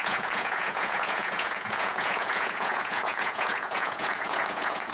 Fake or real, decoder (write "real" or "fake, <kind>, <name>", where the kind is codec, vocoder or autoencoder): fake, vocoder, Vocos